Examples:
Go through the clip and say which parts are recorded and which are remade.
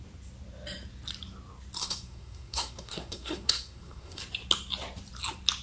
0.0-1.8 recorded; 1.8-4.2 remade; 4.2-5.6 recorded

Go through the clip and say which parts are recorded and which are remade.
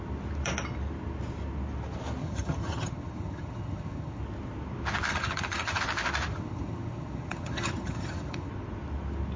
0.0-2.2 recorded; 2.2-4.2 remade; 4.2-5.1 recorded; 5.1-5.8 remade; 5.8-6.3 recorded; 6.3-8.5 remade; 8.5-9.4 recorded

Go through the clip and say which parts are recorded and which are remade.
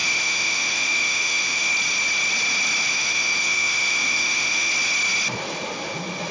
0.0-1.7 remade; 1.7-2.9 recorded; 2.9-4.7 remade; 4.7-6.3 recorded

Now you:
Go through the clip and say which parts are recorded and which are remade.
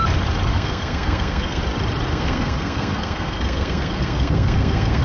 0.0-0.5 recorded; 0.5-1.6 remade; 1.6-2.1 recorded; 2.1-5.0 remade